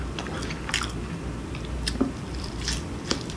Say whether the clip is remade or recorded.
remade